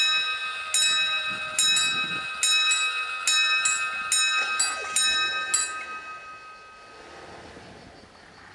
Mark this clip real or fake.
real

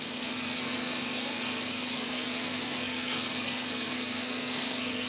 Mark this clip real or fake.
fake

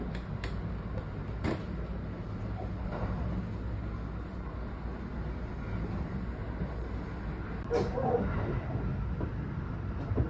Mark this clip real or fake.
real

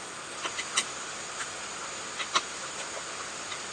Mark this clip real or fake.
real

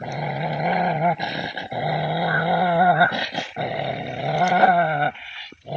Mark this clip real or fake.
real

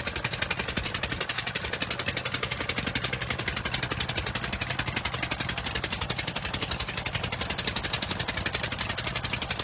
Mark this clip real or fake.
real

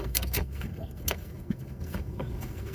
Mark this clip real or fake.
fake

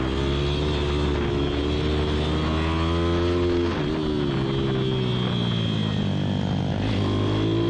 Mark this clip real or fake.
real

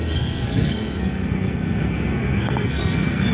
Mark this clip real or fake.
fake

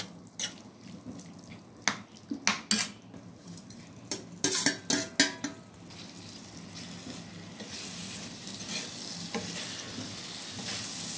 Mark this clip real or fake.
real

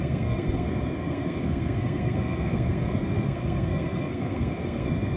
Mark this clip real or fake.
fake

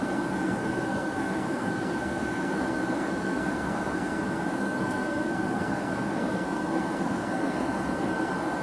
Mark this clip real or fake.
fake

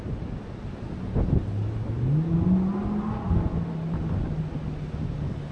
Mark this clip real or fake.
real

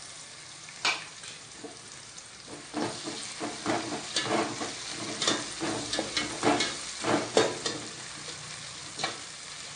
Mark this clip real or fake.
real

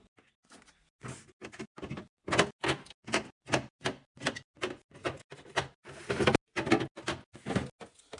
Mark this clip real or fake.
real